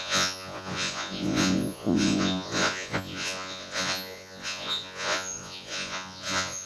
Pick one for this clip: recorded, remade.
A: remade